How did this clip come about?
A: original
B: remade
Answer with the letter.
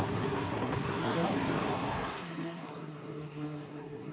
B